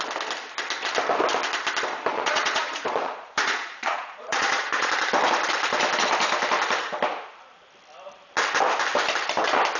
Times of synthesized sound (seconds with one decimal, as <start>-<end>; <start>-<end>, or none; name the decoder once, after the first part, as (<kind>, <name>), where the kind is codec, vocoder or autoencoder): 2.1-4.9 (vocoder, Vocos)